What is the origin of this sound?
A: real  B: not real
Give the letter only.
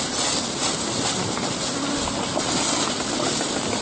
A